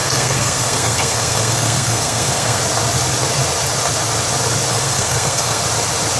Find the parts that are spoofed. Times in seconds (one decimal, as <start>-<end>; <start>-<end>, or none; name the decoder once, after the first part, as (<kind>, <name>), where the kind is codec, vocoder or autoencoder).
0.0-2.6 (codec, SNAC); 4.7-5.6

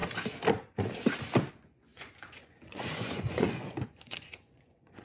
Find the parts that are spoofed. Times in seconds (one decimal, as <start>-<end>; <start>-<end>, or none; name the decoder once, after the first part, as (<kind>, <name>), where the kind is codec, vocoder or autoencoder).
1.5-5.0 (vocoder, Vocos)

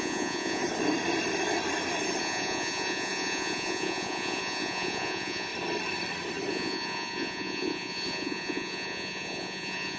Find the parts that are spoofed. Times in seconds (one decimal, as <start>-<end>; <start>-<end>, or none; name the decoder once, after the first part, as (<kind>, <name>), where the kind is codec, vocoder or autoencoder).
0.0-0.6 (vocoder, Vocos); 2.2-5.5; 6.5-10.0

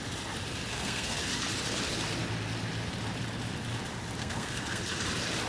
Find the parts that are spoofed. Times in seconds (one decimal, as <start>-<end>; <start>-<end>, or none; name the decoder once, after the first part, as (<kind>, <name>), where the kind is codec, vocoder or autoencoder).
0.7-1.2 (codec, SNAC); 4.2-4.8

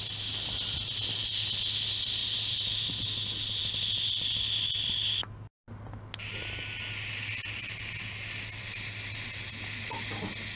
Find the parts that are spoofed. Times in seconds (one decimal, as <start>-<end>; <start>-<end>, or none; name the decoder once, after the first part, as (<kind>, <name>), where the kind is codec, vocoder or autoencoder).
2.2-3.1 (vocoder, BigVGAN v2)

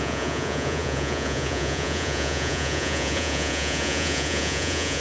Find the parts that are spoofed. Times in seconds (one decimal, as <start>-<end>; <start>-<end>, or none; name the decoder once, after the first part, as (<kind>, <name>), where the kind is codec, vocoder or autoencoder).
0.0-5.0 (vocoder, Vocos)

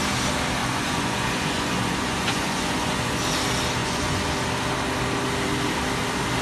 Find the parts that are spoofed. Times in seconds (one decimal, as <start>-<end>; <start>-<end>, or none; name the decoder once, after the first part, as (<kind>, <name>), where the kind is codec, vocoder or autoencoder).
0.6-3.2 (vocoder, Vocos); 3.8-4.3

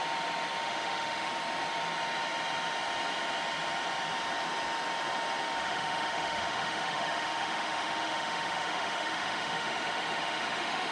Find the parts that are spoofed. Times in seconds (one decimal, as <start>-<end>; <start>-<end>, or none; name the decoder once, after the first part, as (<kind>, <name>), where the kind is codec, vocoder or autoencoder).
0.6-1.3 (autoencoder, DAC-VAE); 5.6-10.9